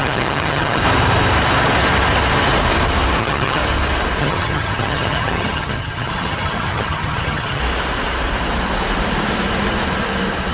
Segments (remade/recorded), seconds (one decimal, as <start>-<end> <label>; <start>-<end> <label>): 0.0-0.8 remade; 0.8-3.2 recorded; 3.2-3.6 remade; 3.6-4.2 recorded; 4.2-7.6 remade; 7.6-10.5 recorded